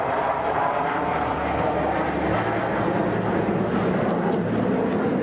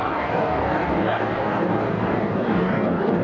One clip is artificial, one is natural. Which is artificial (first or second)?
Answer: second